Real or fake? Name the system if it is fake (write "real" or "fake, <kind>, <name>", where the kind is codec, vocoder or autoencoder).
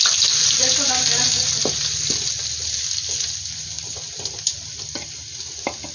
real